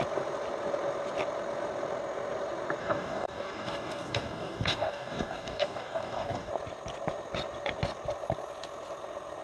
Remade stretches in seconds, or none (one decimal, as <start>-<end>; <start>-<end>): 2.8-6.5